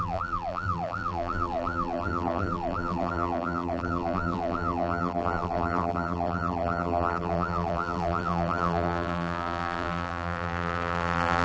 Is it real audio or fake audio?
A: fake